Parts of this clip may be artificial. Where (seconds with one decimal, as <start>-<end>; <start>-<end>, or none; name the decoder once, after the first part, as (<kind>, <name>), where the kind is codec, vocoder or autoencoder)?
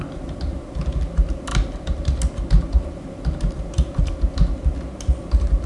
none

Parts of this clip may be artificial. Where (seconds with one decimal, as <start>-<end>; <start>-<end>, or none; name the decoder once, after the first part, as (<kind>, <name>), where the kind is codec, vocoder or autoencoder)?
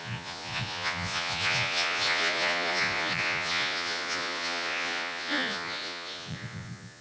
0.0-7.0 (vocoder, Vocos)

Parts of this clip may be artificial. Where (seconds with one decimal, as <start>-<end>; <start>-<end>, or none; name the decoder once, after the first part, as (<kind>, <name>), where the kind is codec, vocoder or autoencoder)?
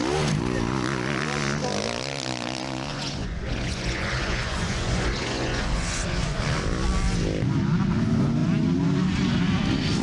2.9-6.4 (vocoder, Vocos)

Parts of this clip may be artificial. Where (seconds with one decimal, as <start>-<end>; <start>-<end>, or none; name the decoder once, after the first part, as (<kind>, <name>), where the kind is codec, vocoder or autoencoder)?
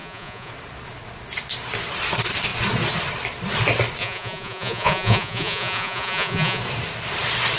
0.0-0.5 (vocoder, Vocos); 4.0-6.6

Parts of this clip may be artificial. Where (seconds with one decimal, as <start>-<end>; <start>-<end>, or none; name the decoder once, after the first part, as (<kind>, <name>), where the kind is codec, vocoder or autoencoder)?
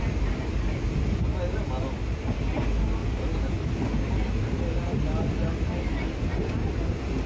none